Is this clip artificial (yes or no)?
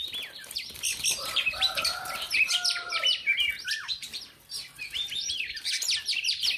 yes